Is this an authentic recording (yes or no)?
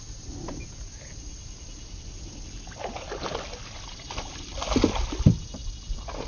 yes